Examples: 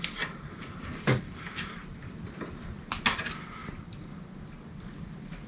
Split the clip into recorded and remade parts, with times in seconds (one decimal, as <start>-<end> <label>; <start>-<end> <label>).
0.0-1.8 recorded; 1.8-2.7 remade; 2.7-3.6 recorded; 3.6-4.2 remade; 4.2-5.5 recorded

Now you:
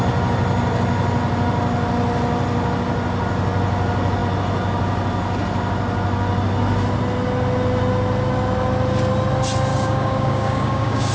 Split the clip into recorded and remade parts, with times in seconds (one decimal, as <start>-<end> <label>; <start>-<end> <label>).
0.0-9.7 recorded; 9.7-11.1 remade

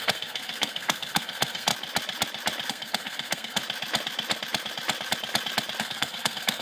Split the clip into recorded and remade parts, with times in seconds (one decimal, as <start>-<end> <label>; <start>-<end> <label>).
0.0-1.7 remade; 1.7-2.7 recorded; 2.7-3.6 remade; 3.6-5.8 recorded; 5.8-6.6 remade

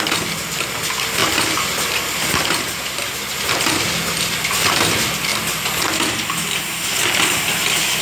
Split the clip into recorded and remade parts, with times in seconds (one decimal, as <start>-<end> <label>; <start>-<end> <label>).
0.0-8.0 recorded

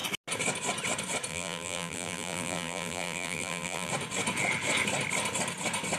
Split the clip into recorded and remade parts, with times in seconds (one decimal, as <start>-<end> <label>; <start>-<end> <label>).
0.0-1.3 recorded; 1.3-3.9 remade; 3.9-6.0 recorded

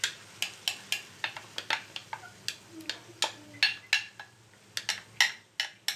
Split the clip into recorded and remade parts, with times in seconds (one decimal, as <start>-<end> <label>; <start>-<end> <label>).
0.0-6.0 recorded

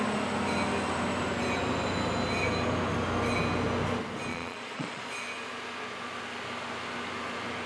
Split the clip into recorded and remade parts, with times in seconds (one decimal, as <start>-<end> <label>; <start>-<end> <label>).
0.0-4.3 recorded; 4.3-5.0 remade; 5.0-7.7 recorded